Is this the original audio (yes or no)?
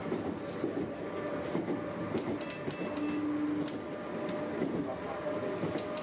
yes